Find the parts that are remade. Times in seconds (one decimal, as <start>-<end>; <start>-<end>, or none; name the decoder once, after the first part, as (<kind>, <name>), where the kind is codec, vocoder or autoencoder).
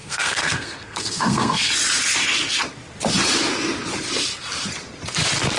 0.0-1.7 (codec, SNAC)